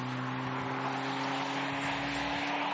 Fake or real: real